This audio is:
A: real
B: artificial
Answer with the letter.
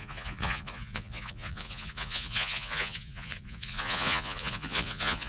B